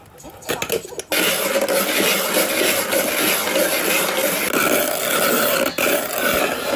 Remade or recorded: recorded